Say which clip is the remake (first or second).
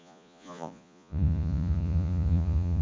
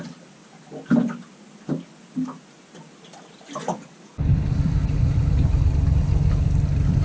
first